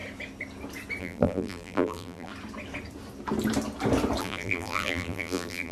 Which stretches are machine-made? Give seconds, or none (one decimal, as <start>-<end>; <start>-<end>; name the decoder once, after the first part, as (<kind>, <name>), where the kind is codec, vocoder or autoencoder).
1.0-2.3 (vocoder, BigVGAN v2); 4.2-5.7